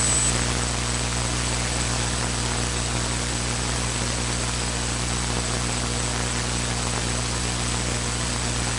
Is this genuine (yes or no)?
yes